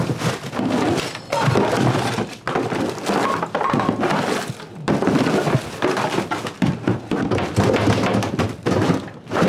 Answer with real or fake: real